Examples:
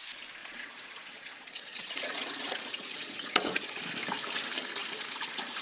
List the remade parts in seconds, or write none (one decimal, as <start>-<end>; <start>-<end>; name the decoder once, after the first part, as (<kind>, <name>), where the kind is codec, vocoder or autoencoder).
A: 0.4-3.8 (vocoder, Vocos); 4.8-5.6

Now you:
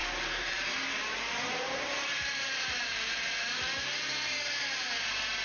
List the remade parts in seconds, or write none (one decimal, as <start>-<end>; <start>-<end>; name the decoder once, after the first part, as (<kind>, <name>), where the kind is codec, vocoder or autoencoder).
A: 0.0-3.2 (vocoder, BigVGAN v2)

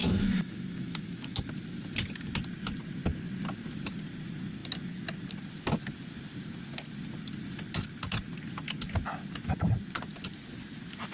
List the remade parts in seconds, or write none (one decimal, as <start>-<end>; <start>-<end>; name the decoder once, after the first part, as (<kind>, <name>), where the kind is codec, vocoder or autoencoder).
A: 0.0-1.5 (autoencoder, DAC-VAE)

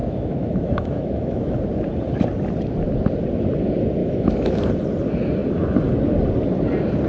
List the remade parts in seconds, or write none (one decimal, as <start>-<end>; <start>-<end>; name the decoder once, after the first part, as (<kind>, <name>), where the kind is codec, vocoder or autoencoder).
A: 0.0-1.6 (autoencoder, DAC-VAE); 4.0-4.7

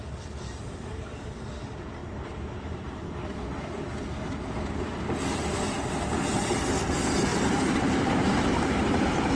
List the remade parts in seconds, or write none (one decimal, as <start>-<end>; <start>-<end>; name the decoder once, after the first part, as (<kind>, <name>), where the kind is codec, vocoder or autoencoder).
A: 2.0-3.1 (vocoder, BigVGAN v2); 7.3-9.0

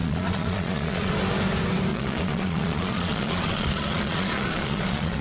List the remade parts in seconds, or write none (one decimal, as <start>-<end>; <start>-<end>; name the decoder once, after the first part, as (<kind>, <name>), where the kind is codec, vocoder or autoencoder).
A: 0.0-1.1 (vocoder, Vocos); 1.9-5.2